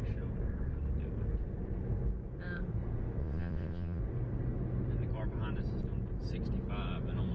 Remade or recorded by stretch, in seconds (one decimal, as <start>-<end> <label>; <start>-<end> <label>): 0.0-3.2 recorded; 3.2-4.0 remade; 4.0-7.3 recorded